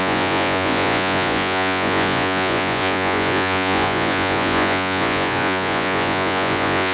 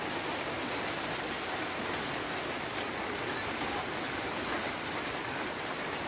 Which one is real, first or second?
second